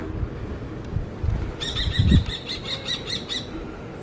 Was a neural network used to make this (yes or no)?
no